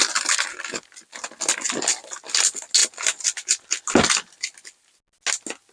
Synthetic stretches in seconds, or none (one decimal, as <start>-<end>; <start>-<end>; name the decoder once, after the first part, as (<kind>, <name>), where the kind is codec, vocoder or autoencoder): none